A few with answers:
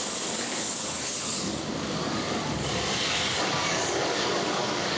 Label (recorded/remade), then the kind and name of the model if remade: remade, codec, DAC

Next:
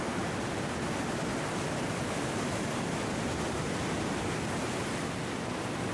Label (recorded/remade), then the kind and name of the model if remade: recorded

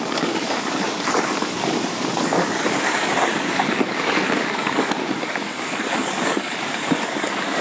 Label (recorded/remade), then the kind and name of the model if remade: remade, codec, DAC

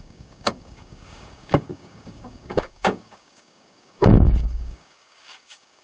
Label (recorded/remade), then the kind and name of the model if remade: remade, codec, DAC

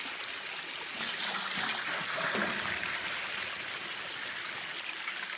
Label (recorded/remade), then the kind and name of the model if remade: recorded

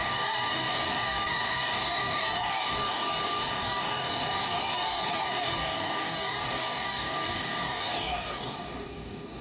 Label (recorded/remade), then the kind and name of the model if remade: remade, codec, DAC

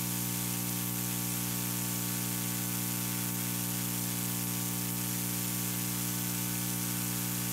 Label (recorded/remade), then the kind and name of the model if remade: recorded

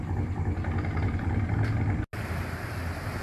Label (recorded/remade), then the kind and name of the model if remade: recorded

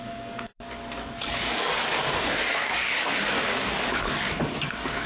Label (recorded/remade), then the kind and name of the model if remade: remade, codec, DAC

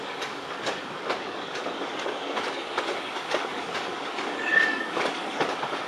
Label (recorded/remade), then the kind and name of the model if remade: remade, codec, DAC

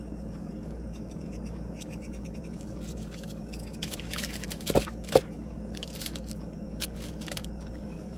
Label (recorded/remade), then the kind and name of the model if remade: remade, codec, DAC